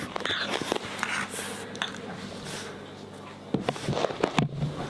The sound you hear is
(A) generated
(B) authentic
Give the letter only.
B